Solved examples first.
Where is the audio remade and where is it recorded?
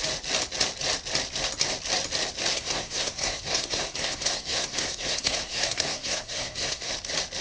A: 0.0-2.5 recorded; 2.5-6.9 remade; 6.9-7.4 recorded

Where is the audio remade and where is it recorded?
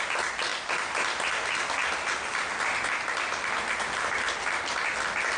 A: 0.0-5.4 recorded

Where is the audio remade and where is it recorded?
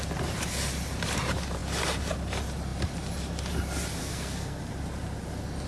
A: 0.0-4.0 recorded; 4.0-4.6 remade; 4.6-5.7 recorded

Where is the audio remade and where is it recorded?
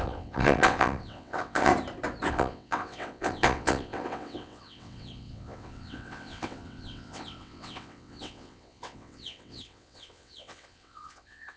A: 0.0-1.7 remade; 1.7-2.3 recorded; 2.3-11.6 remade